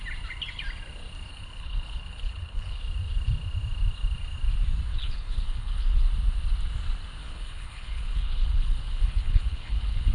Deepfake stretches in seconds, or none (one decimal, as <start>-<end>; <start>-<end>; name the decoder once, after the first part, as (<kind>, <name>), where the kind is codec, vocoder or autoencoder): 1.3-2.8 (codec, HILCodec); 4.9-6.0; 7.2-10.1